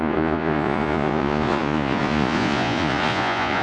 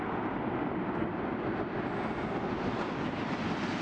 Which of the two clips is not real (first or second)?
first